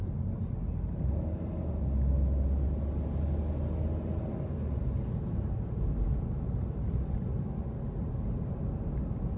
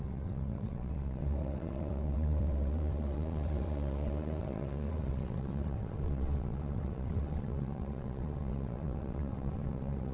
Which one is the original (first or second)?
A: first